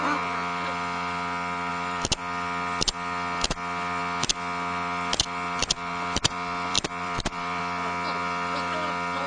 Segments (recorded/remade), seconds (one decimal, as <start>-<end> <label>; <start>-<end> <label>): 0.0-1.7 recorded; 1.7-2.2 remade; 2.2-5.6 recorded; 5.6-7.6 remade; 7.6-9.3 recorded